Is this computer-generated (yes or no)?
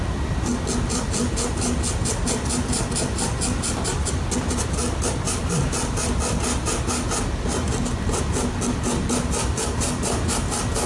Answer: no